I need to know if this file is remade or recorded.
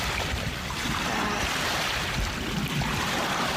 remade